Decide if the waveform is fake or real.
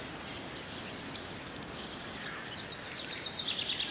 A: real